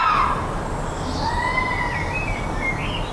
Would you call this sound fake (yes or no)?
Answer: no